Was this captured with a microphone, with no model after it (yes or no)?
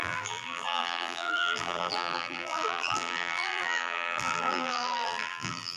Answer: no